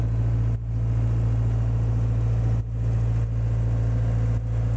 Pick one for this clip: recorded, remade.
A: recorded